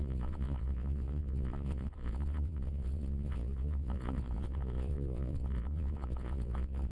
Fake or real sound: fake